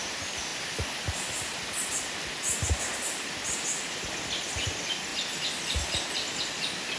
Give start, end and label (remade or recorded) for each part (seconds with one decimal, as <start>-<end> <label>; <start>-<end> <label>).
0.0-7.0 recorded